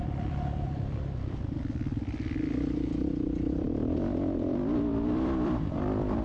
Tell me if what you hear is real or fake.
fake